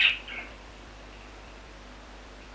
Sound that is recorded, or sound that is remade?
recorded